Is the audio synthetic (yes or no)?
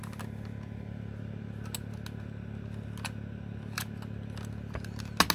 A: no